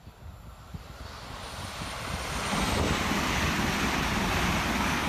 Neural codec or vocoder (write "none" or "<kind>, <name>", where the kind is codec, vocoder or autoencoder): none